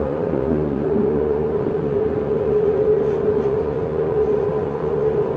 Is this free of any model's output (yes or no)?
no